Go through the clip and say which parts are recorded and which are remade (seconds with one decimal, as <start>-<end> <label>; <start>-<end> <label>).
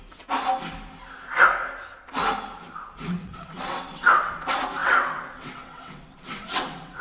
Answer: 0.0-3.2 recorded; 3.2-4.3 remade; 4.3-4.8 recorded; 4.8-7.0 remade